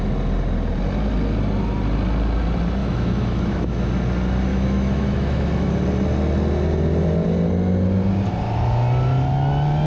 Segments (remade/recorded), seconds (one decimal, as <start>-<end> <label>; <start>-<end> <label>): 0.0-2.8 recorded; 2.8-3.9 remade; 3.9-4.5 recorded; 4.5-5.7 remade; 5.7-9.9 recorded